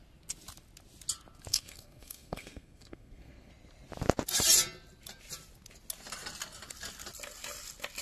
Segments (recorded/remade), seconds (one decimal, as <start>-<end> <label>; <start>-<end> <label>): 0.0-1.5 recorded; 1.5-3.5 remade; 3.5-8.0 recorded